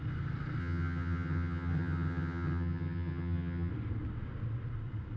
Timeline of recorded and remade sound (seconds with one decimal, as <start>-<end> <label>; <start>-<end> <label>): 0.0-0.6 recorded; 0.6-3.7 remade; 3.7-5.2 recorded